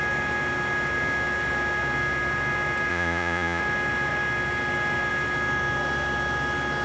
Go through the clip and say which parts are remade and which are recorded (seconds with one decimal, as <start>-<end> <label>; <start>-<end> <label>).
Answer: 0.0-2.9 recorded; 2.9-3.6 remade; 3.6-6.8 recorded

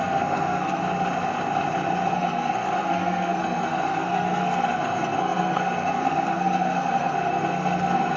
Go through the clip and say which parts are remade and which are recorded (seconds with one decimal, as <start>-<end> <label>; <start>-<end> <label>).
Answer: 0.0-0.8 remade; 0.8-2.1 recorded; 2.1-8.2 remade

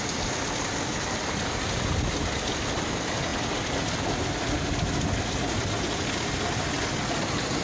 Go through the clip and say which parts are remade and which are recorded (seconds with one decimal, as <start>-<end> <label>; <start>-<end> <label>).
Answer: 0.0-7.6 recorded

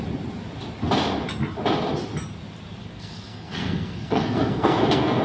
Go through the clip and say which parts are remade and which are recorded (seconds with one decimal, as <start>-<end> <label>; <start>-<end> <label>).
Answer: 0.0-2.8 recorded; 2.8-5.2 remade

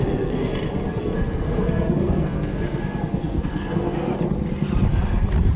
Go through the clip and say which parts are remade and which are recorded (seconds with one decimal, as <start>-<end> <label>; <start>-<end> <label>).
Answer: 0.0-0.5 remade; 0.5-1.0 recorded; 1.0-4.1 remade; 4.1-5.6 recorded

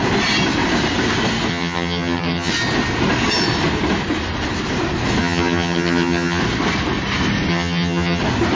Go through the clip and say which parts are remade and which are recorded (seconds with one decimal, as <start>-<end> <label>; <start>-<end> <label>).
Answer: 0.0-1.5 recorded; 1.5-2.5 remade; 2.5-5.2 recorded; 5.2-6.4 remade; 6.4-7.5 recorded; 7.5-8.2 remade; 8.2-8.6 recorded